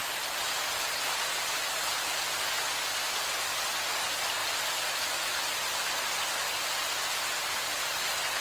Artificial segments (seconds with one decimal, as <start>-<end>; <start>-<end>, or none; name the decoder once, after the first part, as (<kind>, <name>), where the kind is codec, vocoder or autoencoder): none